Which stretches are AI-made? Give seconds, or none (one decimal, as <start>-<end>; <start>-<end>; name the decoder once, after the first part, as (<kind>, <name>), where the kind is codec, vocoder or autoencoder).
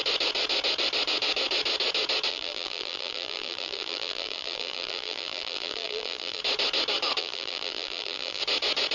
2.3-6.4 (vocoder, BigVGAN v2); 7.2-8.4